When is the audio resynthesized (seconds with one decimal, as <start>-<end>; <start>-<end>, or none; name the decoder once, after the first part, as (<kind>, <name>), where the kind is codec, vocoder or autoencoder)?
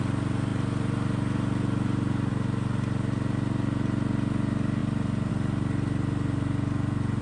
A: 4.8-5.3 (vocoder, BigVGAN v2)